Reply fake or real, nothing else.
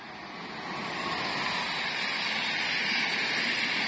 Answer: real